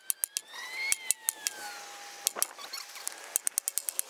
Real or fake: real